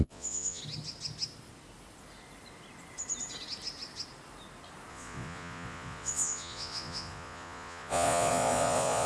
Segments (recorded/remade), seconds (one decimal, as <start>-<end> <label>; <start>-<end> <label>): 0.0-0.6 remade; 0.6-4.9 recorded; 4.9-9.1 remade